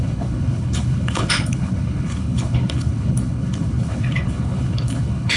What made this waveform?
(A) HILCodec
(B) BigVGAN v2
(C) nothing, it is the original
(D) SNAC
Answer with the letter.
A